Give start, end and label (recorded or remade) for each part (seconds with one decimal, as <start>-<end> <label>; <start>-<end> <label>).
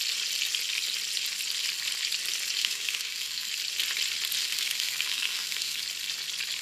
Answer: 0.0-2.6 recorded; 2.6-3.5 remade; 3.5-4.4 recorded; 4.4-5.8 remade; 5.8-6.6 recorded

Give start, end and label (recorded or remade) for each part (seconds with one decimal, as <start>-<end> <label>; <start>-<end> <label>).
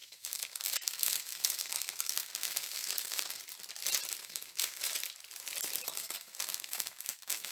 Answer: 0.0-3.4 remade; 3.4-4.2 recorded; 4.2-4.8 remade; 4.8-5.9 recorded; 5.9-7.5 remade